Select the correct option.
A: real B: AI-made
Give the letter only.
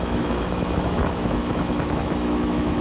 B